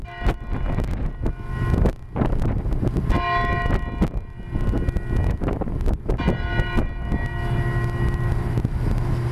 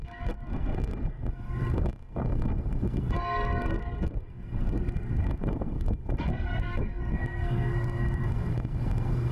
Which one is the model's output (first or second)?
second